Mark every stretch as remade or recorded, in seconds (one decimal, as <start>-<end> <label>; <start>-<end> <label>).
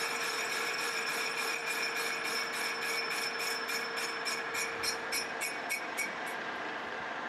0.0-1.6 remade; 1.6-5.8 recorded; 5.8-7.3 remade